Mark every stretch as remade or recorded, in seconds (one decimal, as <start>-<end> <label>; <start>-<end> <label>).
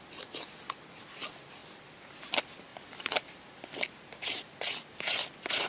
0.0-1.6 recorded; 1.6-2.3 remade; 2.3-2.7 recorded; 2.7-4.7 remade; 4.7-5.7 recorded